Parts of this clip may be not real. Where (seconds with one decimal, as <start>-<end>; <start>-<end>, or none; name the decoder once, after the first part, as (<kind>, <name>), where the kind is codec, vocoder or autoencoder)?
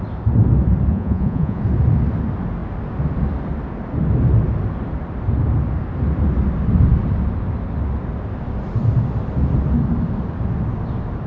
0.9-1.6 (vocoder, Vocos)